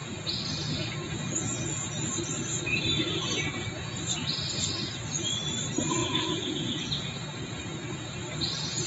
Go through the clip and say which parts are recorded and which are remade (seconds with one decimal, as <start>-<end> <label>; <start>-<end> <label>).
0.0-6.0 recorded; 6.0-6.8 remade; 6.8-8.9 recorded